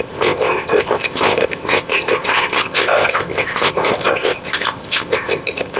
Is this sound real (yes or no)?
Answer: no